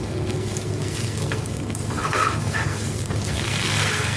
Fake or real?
fake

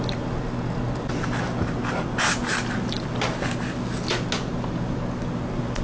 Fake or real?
real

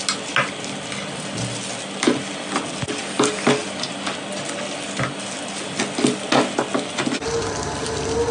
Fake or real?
real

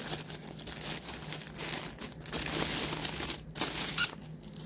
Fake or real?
real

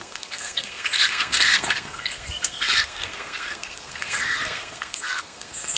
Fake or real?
fake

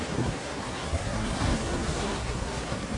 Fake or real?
fake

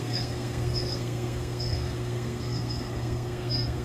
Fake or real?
fake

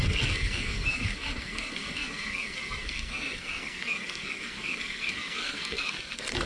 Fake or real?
fake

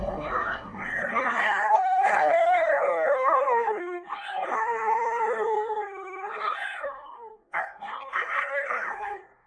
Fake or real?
fake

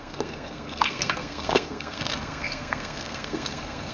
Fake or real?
fake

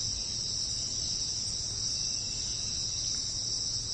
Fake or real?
real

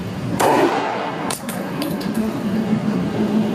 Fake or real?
fake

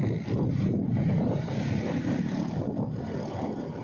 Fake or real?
real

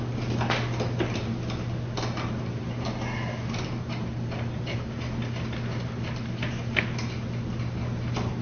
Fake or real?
real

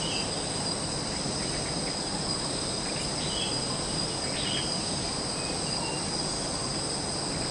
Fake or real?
real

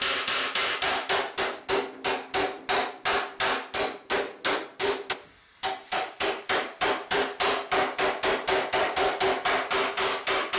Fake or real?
real